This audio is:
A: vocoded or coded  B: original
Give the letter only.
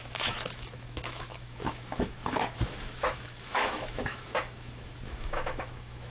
A